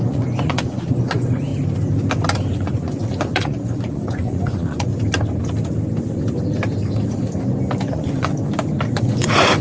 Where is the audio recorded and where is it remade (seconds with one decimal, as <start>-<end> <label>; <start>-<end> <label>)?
0.0-1.5 remade; 1.5-2.5 recorded; 2.5-4.9 remade; 4.9-7.9 recorded; 7.9-8.3 remade; 8.3-8.9 recorded; 8.9-9.6 remade